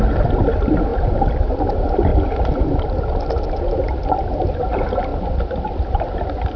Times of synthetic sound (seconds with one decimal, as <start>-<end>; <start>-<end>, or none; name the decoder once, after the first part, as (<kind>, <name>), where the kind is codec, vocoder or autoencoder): none